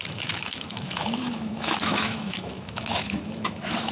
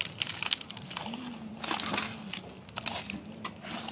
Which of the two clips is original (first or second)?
second